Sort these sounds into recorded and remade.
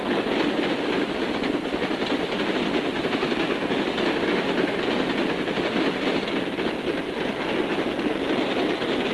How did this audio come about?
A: recorded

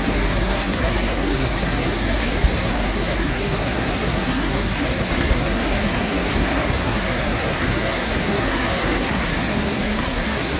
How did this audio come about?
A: remade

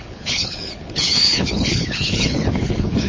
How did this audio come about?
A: remade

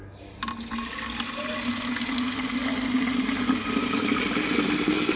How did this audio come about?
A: recorded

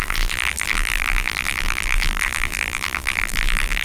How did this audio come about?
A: remade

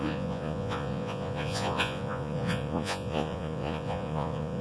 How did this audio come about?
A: remade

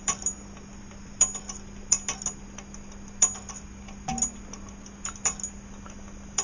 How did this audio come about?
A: recorded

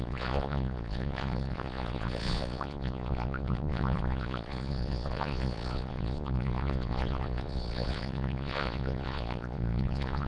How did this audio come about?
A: remade